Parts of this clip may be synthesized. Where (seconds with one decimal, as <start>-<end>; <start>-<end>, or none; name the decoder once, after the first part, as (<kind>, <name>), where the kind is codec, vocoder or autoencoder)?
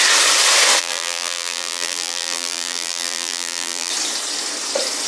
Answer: 0.8-3.9 (vocoder, BigVGAN v2)